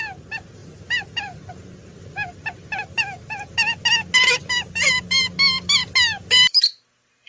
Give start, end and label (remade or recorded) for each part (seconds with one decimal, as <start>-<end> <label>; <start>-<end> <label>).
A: 0.0-7.3 recorded